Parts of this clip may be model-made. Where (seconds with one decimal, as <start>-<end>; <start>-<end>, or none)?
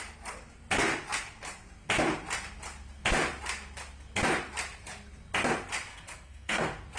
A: 5.9-6.6